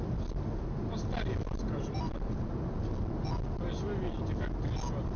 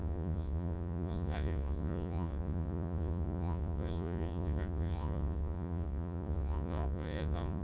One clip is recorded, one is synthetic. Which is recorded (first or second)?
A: first